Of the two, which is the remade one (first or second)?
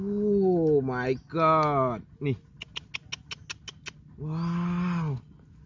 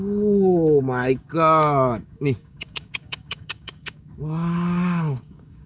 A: second